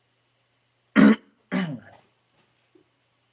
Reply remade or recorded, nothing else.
recorded